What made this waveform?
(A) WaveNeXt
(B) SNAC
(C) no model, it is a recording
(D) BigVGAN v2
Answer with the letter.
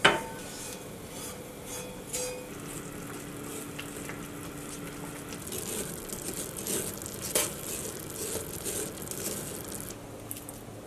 C